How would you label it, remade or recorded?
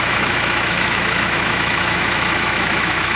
remade